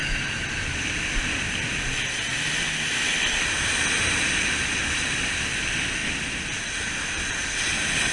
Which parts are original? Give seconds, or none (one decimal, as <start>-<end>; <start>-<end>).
0.0-8.1